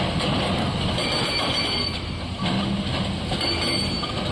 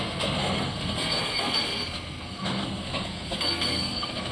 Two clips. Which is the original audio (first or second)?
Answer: first